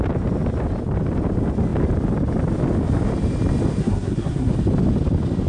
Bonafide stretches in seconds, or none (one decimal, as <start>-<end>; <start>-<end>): 0.0-3.8; 4.5-5.5